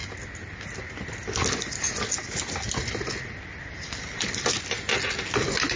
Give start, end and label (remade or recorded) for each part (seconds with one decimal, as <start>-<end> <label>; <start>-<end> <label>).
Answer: 0.0-5.8 recorded